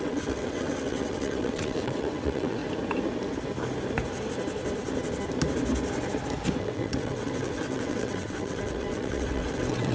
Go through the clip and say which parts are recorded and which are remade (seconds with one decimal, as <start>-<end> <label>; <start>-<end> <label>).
0.0-2.6 remade; 2.6-6.6 recorded; 6.6-9.9 remade